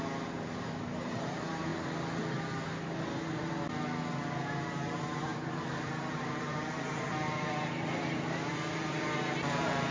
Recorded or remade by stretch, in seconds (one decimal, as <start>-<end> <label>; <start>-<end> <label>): 0.0-1.7 remade; 1.7-4.1 recorded; 4.1-9.9 remade